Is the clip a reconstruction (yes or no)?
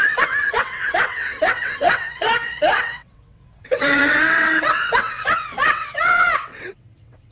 yes